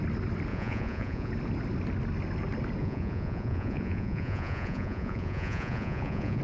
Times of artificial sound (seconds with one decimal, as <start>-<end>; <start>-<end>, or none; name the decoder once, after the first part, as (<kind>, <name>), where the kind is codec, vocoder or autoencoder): 0.5-1.3 (vocoder, Vocos); 2.8-6.4